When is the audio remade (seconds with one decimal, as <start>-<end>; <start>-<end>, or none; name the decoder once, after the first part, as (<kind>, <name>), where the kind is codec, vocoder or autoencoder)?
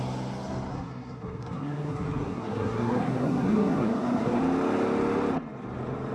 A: 0.7-4.4 (codec, SNAC)